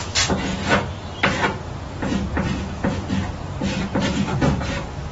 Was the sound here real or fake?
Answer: real